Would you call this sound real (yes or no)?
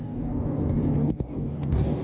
no